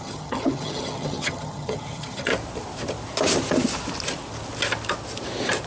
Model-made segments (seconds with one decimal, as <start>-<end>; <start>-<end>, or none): 0.0-2.3